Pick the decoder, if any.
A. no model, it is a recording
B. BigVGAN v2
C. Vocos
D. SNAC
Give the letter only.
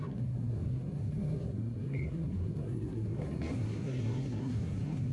D